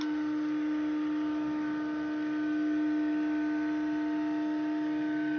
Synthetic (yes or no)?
no